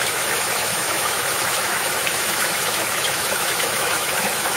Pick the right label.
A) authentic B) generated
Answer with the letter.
B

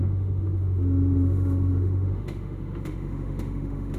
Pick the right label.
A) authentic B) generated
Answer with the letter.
B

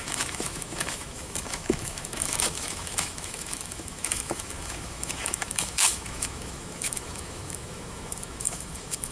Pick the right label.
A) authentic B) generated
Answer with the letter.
B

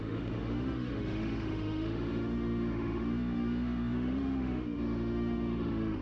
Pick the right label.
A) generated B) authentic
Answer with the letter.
A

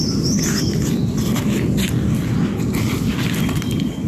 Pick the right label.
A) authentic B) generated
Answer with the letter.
A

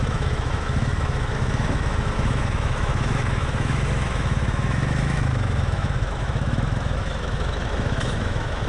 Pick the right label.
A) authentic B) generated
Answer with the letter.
B